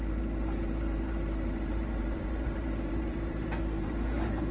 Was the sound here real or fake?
fake